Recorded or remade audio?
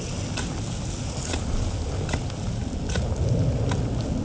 recorded